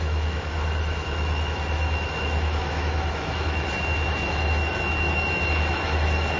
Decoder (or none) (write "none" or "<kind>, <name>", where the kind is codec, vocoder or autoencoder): autoencoder, DAC-VAE